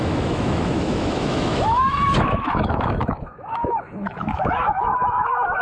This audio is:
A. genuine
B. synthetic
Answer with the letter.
B